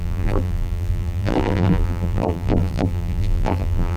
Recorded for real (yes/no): no